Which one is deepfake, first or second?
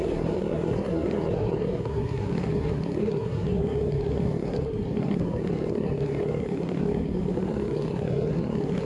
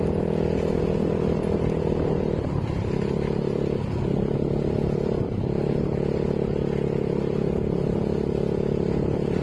first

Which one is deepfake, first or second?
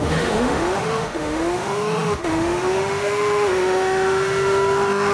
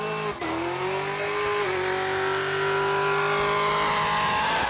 first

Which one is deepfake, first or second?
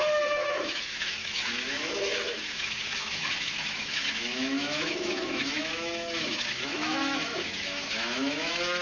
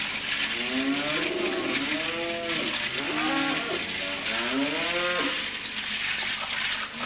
first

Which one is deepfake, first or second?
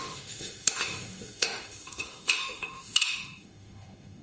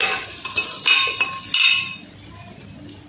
first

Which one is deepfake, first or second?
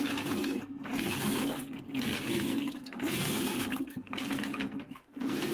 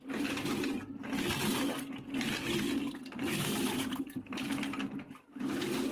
first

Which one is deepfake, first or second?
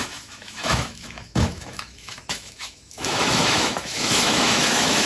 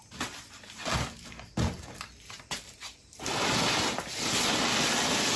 first